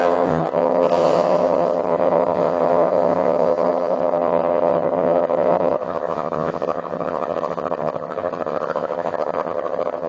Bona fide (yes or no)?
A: no